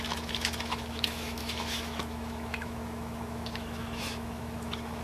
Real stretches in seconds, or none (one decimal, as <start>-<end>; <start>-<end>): none